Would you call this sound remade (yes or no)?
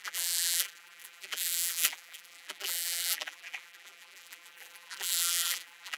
yes